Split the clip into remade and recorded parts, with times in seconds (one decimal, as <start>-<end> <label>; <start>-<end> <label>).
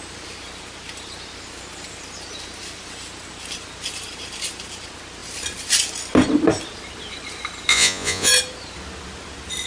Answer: 0.0-7.7 recorded; 7.7-8.3 remade; 8.3-9.7 recorded